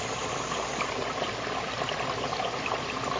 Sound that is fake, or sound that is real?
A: real